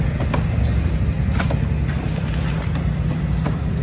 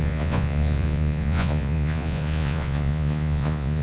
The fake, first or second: second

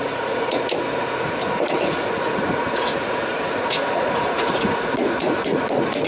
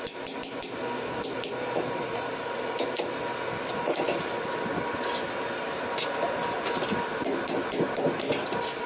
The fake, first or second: first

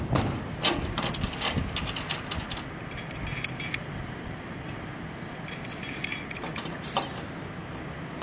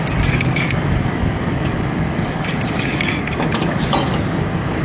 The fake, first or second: second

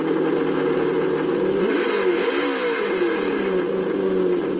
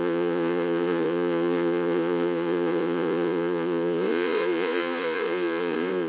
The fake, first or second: second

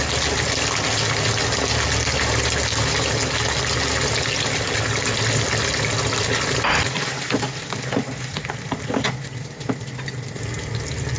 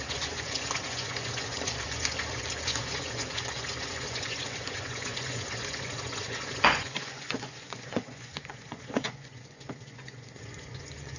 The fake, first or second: second